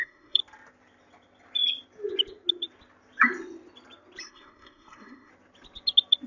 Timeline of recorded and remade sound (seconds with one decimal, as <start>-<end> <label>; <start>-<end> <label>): 0.0-0.4 remade; 0.4-4.2 recorded; 4.2-5.3 remade; 5.3-6.3 recorded